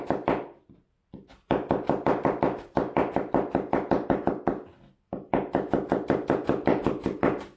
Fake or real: real